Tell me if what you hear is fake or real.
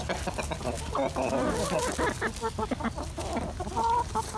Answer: real